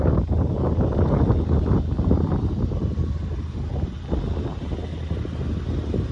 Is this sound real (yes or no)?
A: yes